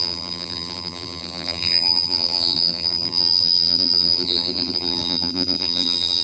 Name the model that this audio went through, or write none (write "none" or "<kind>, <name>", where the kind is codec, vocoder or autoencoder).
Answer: vocoder, BigVGAN v2